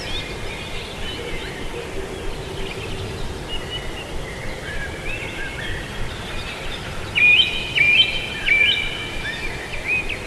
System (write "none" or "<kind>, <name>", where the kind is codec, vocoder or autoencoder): none